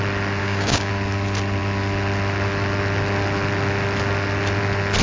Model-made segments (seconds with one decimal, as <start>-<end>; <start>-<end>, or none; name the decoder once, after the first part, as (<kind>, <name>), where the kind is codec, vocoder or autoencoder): 0.4-0.9 (codec, DAC)